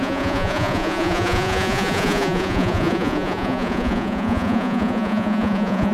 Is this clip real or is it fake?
fake